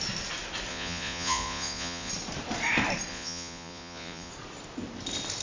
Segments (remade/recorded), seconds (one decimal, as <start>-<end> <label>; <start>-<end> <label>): 0.0-0.7 recorded; 0.7-2.1 remade; 2.1-3.1 recorded; 3.1-4.3 remade; 4.3-5.4 recorded

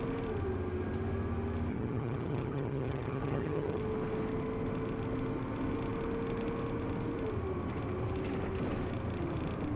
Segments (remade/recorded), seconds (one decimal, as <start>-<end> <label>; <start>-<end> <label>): 0.0-1.7 recorded; 1.7-3.8 remade; 3.8-9.8 recorded